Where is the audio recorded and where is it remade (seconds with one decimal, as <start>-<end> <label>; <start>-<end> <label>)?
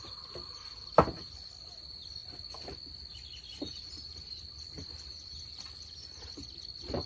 0.0-7.1 recorded